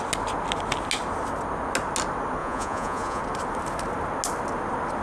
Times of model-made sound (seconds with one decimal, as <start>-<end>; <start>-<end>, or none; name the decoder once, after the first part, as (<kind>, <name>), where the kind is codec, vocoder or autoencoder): 2.4-3.2 (vocoder, Vocos)